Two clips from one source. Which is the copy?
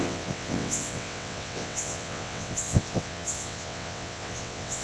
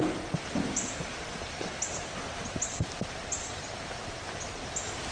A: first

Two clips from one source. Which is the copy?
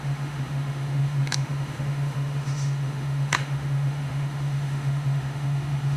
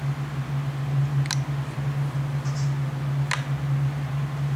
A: first